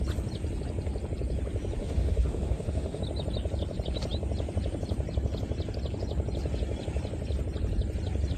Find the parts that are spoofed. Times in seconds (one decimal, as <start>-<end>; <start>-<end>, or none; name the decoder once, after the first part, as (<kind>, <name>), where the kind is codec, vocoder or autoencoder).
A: 1.8-3.0 (autoencoder, DAC-VAE)